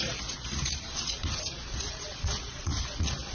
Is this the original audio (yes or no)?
no